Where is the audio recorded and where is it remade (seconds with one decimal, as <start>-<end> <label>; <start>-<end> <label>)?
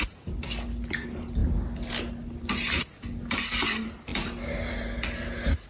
0.0-5.7 recorded